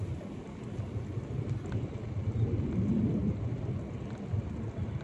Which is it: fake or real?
real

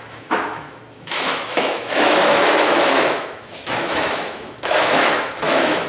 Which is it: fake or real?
fake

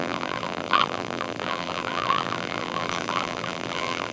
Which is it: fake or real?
fake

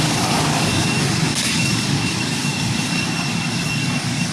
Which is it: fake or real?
fake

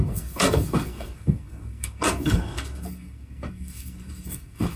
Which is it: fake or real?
fake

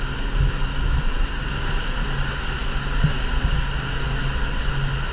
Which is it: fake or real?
real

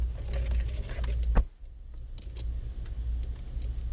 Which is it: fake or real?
real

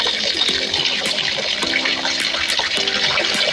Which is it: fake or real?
real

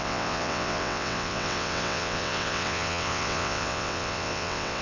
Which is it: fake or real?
fake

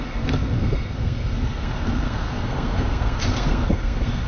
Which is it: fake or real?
fake